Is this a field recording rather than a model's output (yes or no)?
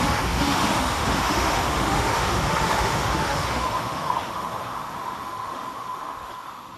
no